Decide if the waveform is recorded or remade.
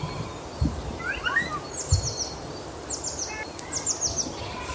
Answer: recorded